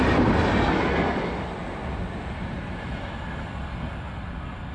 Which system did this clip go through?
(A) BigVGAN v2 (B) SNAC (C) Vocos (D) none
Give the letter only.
D